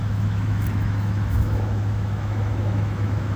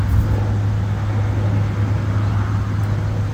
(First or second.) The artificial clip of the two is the first